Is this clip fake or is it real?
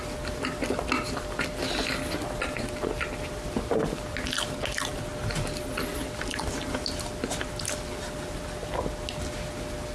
real